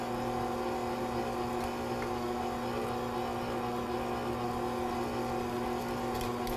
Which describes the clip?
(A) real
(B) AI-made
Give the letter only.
A